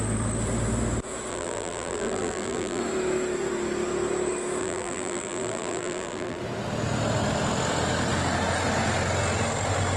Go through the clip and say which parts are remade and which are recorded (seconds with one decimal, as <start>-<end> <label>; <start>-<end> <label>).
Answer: 0.0-1.3 recorded; 1.3-2.8 remade; 2.8-4.6 recorded; 4.6-6.4 remade; 6.4-10.0 recorded